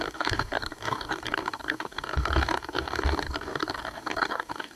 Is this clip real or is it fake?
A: fake